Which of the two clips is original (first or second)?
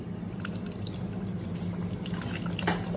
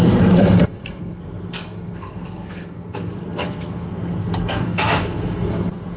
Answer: first